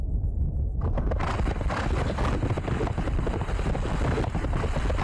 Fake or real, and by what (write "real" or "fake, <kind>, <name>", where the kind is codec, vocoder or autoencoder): real